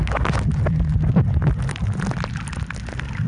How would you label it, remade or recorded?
recorded